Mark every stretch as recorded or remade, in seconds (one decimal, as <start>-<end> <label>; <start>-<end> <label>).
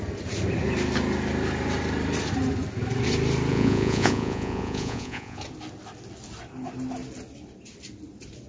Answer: 0.0-3.5 recorded; 3.5-5.4 remade; 5.4-8.5 recorded